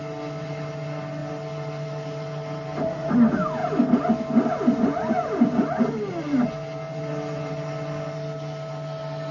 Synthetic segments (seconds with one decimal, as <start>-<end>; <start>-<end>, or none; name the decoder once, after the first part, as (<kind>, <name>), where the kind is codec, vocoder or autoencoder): none